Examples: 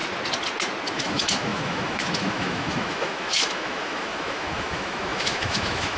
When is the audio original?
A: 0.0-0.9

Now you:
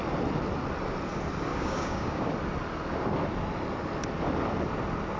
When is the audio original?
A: 0.0-1.5; 2.3-5.2

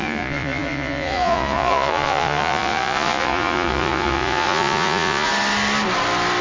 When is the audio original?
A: 5.3-6.4

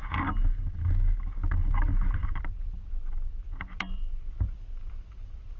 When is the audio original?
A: 0.0-5.6

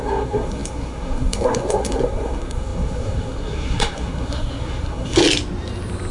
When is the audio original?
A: 5.2-6.1

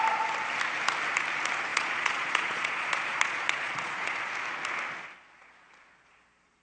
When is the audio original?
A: 0.0-1.7; 4.3-6.6

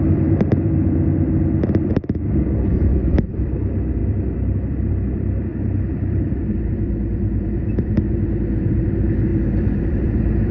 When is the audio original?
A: 9.3-9.8

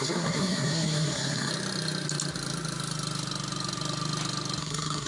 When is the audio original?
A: 1.5-4.6